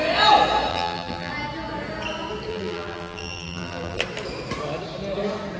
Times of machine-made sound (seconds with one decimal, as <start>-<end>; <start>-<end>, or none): 0.7-1.3; 2.5-4.0